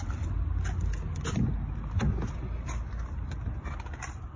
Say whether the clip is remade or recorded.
recorded